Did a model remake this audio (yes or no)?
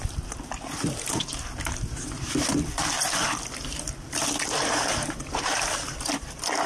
no